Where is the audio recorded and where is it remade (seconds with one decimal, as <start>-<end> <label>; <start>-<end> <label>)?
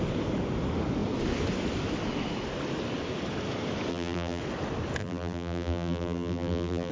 0.0-3.9 recorded; 3.9-4.4 remade; 4.4-5.0 recorded; 5.0-6.9 remade